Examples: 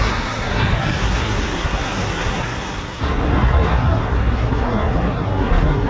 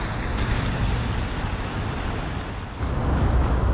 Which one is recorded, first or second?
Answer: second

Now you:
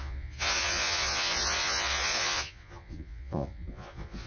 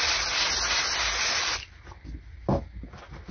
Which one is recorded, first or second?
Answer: second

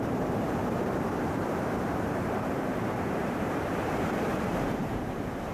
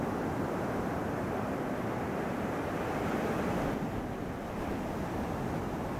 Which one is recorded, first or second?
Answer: second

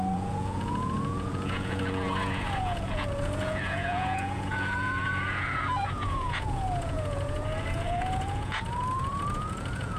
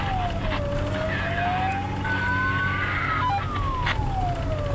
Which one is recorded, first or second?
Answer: second